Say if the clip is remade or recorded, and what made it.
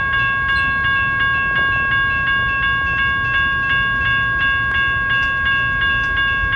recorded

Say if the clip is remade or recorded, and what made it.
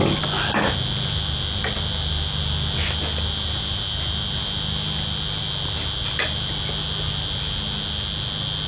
recorded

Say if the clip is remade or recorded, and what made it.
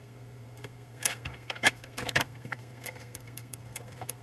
remade, codec, SNAC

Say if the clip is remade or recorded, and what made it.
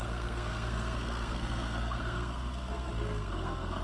remade, codec, SNAC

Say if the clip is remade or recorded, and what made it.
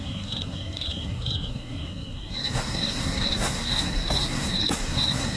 remade, codec, SNAC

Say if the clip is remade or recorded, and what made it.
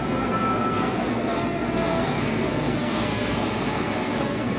remade, codec, SNAC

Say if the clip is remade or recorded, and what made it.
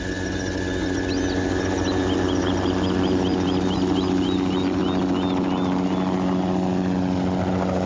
recorded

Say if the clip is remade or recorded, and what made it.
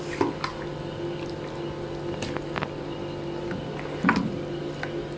recorded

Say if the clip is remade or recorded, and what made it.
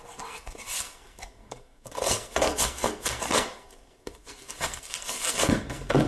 remade, codec, SNAC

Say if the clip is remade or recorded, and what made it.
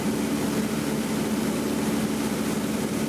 recorded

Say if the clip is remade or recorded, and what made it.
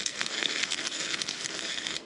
remade, codec, SNAC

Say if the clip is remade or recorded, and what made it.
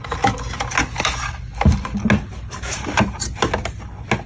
recorded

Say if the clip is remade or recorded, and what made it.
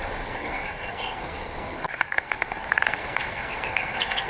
remade, codec, SNAC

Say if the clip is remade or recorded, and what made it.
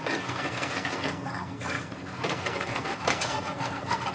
remade, codec, SNAC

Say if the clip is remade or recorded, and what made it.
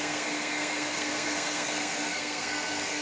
remade, codec, SNAC